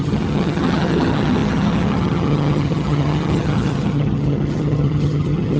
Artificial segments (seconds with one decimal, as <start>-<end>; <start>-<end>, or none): 0.0-5.6